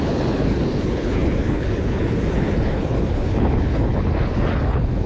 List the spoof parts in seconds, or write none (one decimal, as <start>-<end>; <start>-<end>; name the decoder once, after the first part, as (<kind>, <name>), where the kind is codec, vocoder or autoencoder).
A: 0.0-5.1 (codec, HILCodec)